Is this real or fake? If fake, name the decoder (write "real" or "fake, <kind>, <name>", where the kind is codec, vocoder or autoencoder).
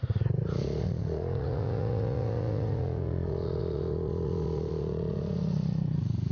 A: fake, vocoder, Vocos